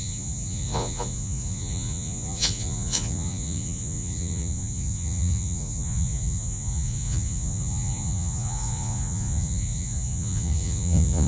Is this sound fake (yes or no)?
yes